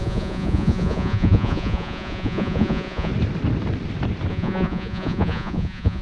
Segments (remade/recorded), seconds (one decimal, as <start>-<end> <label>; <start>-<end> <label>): 0.0-3.1 remade; 3.1-4.3 recorded; 4.3-6.0 remade